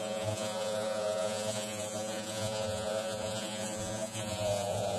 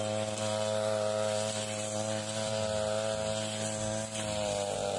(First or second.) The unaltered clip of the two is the second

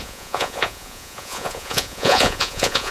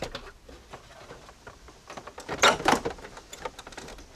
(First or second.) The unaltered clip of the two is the second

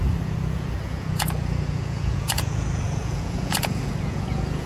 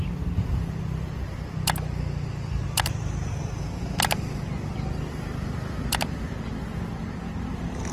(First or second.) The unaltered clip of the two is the second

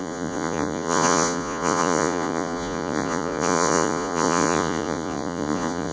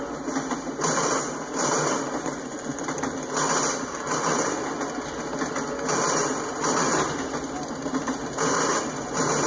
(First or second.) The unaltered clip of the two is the second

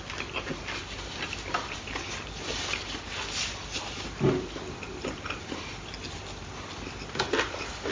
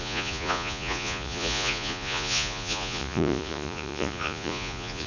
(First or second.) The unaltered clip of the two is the first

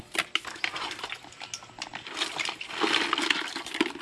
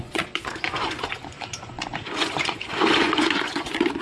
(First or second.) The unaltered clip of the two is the first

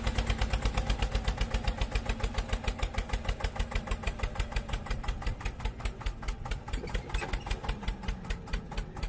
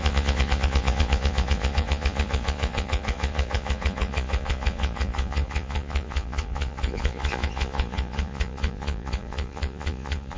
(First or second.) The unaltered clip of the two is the first